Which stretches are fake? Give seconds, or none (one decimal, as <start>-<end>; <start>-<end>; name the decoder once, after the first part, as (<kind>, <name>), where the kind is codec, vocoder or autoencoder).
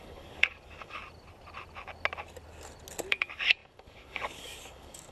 0.0-1.0 (codec, DAC); 3.1-5.1